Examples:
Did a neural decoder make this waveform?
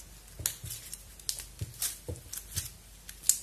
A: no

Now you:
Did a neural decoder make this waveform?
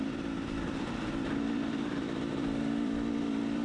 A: yes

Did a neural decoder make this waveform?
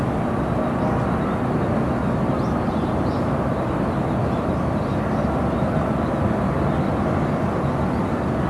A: no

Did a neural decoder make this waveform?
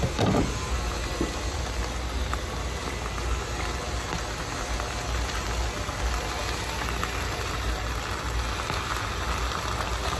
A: no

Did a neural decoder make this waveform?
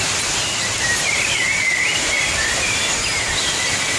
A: yes